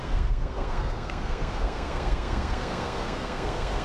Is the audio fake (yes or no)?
yes